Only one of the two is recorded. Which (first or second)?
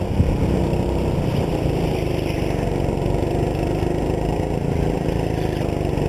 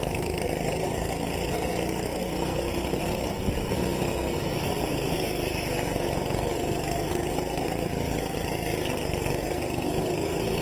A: first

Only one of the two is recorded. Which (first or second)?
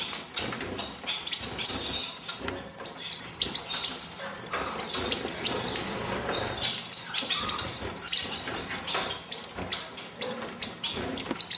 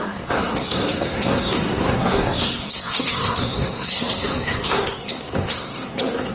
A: first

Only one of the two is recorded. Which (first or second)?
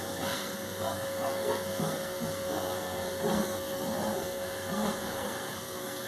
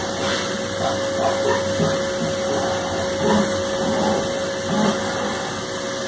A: second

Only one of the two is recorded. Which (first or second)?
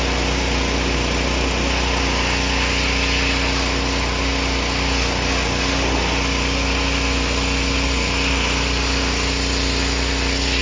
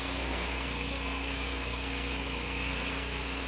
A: first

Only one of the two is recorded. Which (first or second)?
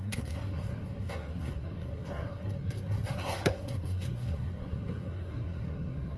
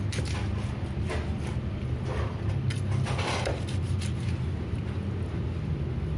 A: second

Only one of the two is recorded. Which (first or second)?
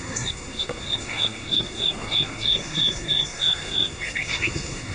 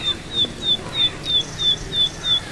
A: second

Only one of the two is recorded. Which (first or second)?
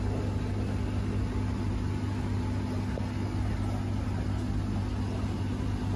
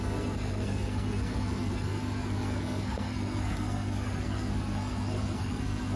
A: first